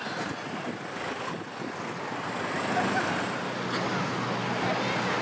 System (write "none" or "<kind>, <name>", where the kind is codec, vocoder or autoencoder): none